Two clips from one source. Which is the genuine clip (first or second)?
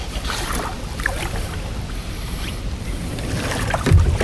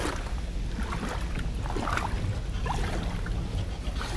second